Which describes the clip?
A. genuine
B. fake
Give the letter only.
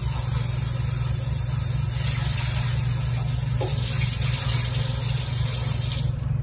A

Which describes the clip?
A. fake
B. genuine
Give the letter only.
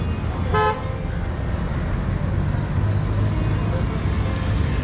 B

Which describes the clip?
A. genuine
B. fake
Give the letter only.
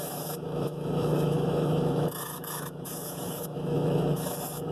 B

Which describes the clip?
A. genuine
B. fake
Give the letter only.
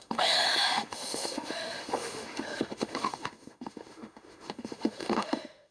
B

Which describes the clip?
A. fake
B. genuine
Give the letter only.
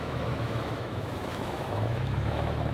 A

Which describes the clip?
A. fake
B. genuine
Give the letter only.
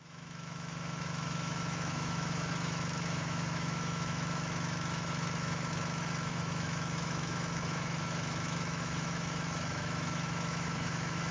A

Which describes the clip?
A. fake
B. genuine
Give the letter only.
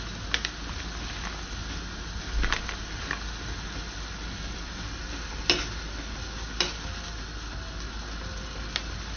B